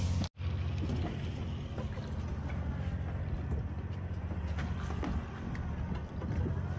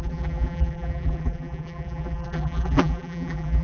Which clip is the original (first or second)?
first